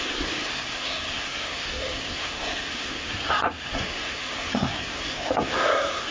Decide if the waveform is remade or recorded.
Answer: remade